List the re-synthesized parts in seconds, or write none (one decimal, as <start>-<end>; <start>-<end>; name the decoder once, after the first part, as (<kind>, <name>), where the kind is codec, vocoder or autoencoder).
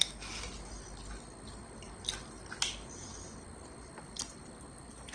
none